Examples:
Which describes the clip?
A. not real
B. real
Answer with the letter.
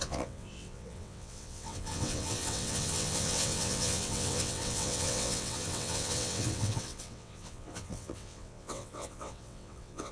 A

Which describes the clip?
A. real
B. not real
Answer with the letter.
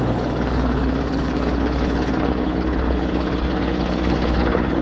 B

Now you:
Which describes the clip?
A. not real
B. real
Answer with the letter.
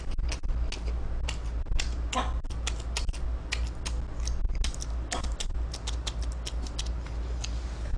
B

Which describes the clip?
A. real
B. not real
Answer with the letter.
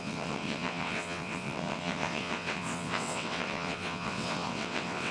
B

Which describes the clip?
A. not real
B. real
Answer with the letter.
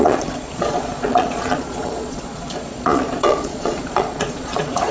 A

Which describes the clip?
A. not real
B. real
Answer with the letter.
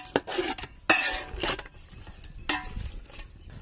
B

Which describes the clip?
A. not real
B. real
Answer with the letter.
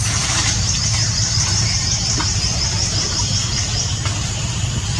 A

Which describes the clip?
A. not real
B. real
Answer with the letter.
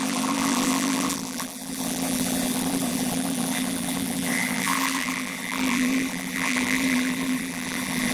A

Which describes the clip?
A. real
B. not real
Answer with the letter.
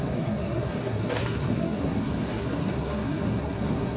B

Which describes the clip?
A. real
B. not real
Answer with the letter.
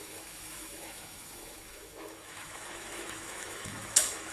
B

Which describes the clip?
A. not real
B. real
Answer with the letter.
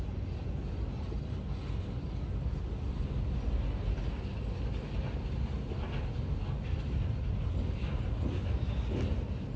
B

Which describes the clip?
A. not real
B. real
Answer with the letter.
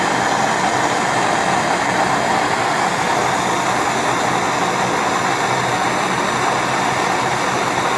B